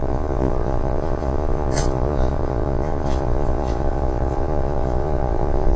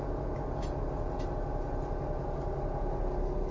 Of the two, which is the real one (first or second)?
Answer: second